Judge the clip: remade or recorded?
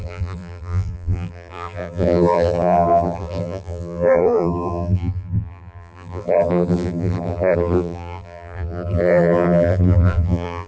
remade